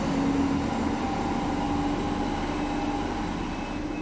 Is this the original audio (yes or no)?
yes